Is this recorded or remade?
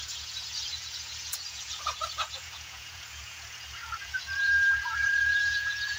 remade